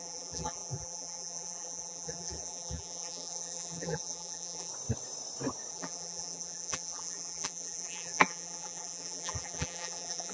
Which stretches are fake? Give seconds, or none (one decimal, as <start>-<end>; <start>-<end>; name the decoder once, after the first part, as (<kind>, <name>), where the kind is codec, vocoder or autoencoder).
0.0-4.7 (vocoder, BigVGAN v2); 5.7-10.3